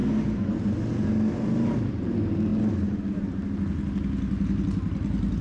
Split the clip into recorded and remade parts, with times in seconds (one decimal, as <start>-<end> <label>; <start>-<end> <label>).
0.0-5.4 recorded